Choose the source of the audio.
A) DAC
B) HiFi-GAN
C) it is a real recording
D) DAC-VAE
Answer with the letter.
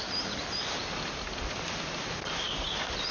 C